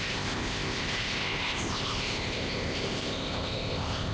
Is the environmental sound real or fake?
fake